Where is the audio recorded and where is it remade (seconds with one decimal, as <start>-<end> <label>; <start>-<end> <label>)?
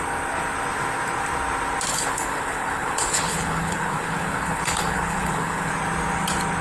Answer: 0.0-1.9 recorded; 1.9-5.7 remade; 5.7-6.6 recorded